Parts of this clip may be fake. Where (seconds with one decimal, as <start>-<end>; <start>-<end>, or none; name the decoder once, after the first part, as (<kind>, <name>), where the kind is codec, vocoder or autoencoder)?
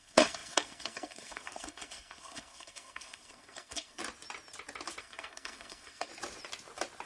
0.0-4.0 (codec, SNAC); 5.0-6.1